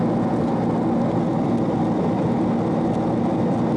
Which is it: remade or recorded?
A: recorded